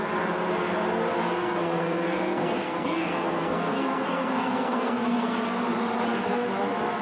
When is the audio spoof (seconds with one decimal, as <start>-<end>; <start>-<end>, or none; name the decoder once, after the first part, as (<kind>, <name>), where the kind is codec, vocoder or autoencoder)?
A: 1.4-5.6 (codec, SNAC)